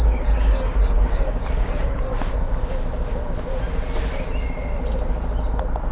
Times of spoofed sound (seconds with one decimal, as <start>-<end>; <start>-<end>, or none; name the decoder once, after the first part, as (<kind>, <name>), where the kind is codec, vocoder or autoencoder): 0.0-2.1 (codec, DAC)

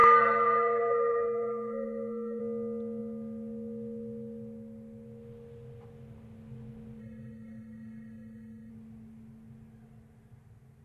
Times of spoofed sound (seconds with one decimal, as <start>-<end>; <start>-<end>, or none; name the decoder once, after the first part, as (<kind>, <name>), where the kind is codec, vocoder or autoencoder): 0.0-2.4 (codec, SNAC); 7.0-8.7

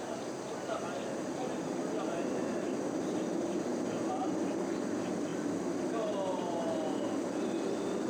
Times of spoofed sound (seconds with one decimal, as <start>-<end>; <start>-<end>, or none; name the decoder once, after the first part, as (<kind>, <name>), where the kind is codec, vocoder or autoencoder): none

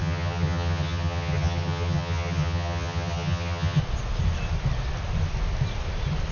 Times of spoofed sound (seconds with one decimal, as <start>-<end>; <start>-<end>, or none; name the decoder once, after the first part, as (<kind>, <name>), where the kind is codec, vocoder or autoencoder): 0.0-3.8 (vocoder, HiFi-GAN)

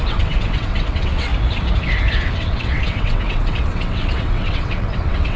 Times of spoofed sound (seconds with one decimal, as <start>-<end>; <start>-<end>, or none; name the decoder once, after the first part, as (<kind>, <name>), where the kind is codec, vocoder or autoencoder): 0.0-1.3 (vocoder, WaveNeXt); 2.3-5.4

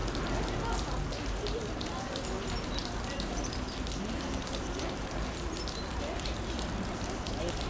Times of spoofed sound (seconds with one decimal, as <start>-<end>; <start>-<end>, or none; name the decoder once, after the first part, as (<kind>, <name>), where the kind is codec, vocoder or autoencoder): 0.0-0.5 (vocoder, BigVGAN v2)

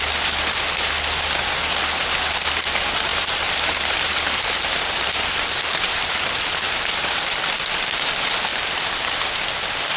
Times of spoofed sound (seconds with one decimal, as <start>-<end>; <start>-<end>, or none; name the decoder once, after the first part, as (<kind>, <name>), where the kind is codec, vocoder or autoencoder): 3.1-7.2 (vocoder, BigVGAN v2); 8.5-9.2